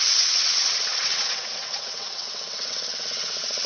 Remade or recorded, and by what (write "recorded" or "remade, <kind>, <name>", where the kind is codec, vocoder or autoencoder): remade, vocoder, WaveNeXt